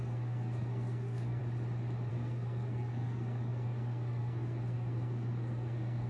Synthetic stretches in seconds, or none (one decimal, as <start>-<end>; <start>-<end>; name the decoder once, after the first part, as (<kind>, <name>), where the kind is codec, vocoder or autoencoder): 0.0-1.4 (codec, SNAC); 2.1-6.1